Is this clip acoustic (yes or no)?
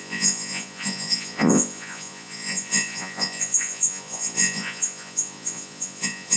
no